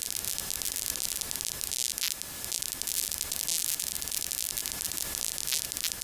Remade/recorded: recorded